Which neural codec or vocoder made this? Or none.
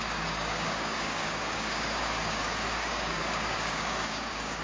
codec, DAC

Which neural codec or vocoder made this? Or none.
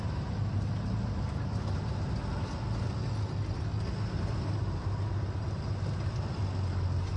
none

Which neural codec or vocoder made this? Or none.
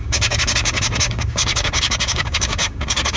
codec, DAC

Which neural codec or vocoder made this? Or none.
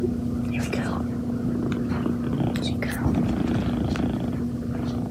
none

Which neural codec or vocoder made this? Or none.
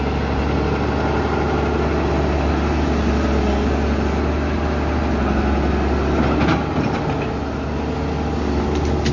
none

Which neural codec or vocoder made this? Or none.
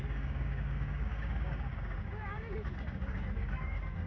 codec, DAC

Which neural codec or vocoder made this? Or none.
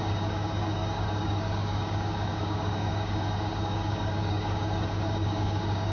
codec, DAC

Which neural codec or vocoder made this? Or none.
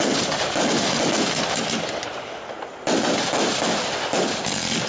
none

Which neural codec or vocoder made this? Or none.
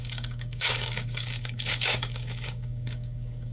codec, DAC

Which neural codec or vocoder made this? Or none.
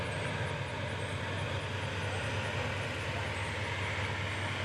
none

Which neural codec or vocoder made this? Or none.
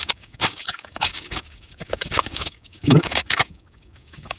codec, DAC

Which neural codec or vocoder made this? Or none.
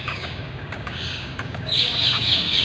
codec, DAC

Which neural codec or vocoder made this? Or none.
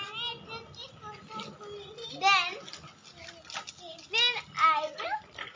none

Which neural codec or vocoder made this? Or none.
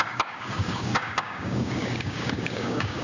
codec, DAC